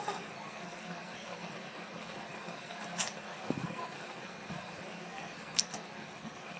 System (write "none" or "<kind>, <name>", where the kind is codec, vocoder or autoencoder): codec, SNAC